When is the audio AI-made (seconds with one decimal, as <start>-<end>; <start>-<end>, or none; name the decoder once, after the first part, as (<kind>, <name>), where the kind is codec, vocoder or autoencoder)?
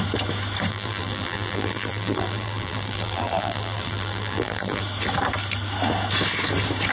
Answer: 0.7-4.8 (vocoder, BigVGAN v2)